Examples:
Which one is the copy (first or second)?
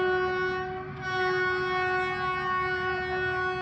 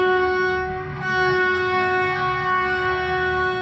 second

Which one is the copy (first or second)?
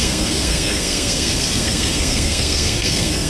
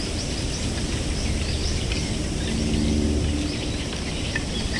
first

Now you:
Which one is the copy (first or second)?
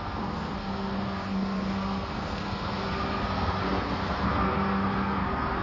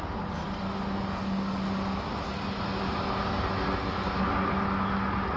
first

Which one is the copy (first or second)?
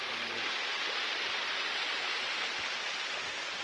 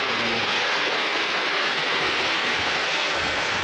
second